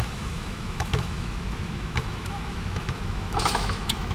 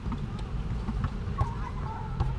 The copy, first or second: first